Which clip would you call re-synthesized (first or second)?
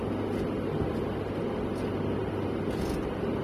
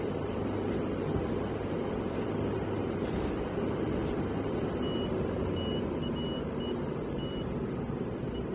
second